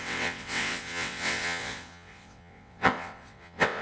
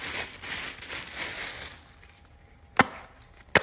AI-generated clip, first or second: first